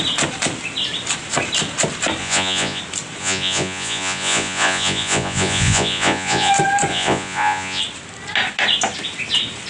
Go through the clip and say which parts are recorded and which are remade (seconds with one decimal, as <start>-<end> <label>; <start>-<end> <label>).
0.0-2.2 recorded; 2.2-2.8 remade; 2.8-3.2 recorded; 3.2-6.5 remade; 6.5-6.9 recorded; 6.9-7.8 remade; 7.8-9.7 recorded